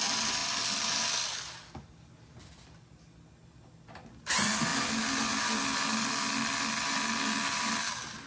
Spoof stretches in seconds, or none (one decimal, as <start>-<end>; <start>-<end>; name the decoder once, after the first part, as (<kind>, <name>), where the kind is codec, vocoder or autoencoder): none